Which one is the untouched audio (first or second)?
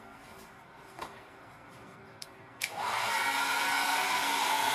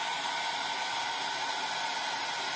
second